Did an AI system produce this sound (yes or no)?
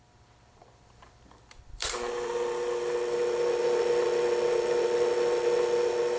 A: yes